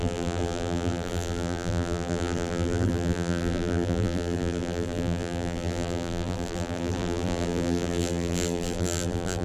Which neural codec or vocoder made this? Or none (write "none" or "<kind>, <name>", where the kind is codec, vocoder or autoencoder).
vocoder, BigVGAN v2